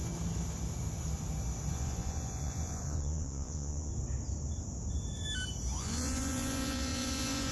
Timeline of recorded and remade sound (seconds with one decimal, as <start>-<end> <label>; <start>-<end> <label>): 0.0-1.7 recorded; 1.7-3.9 remade; 3.9-5.8 recorded; 5.8-7.5 remade